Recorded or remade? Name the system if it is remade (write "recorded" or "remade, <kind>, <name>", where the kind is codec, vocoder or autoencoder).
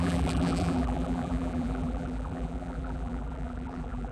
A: remade, vocoder, BigVGAN v2